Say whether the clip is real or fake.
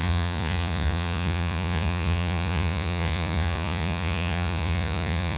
fake